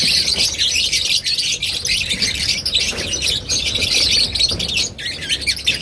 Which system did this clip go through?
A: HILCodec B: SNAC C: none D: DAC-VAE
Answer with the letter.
C